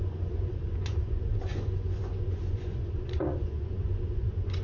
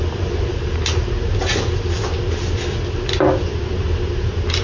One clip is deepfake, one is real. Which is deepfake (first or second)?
first